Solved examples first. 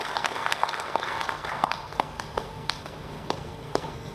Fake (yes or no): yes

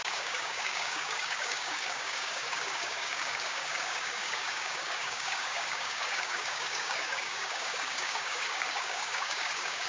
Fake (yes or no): yes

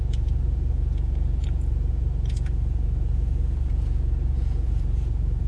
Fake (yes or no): yes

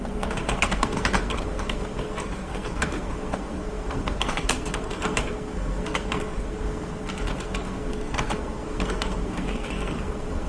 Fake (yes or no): yes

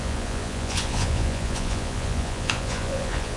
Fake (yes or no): yes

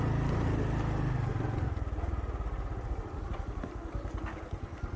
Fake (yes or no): no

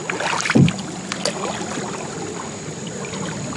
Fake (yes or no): no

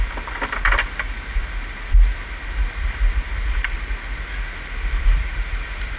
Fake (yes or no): no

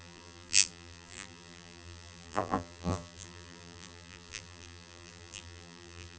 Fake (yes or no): yes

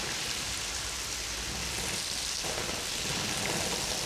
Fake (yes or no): no